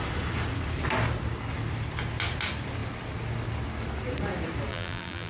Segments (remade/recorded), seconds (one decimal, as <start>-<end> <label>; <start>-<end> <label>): 0.0-4.7 recorded; 4.7-5.3 remade